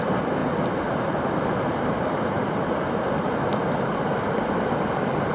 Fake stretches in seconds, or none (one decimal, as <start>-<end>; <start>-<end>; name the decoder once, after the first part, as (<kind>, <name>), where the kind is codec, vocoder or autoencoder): 3.5-5.3 (vocoder, BigVGAN v2)